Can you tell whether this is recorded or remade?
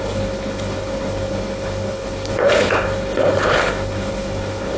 remade